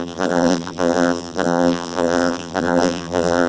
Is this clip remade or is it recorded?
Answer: remade